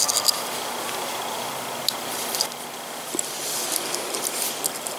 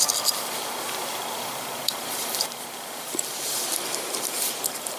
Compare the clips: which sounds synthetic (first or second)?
second